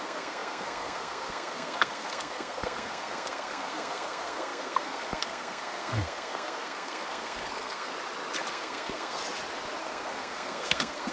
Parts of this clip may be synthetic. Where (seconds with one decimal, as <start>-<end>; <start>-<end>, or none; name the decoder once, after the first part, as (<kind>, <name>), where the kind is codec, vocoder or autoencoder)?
0.0-7.9 (codec, SNAC); 8.5-9.2; 9.8-11.1